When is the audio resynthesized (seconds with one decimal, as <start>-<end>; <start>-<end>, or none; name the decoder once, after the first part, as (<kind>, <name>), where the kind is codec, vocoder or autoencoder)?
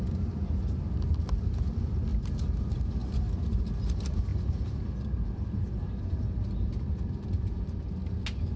2.1-2.6 (vocoder, BigVGAN v2); 3.0-3.6; 4.3-7.9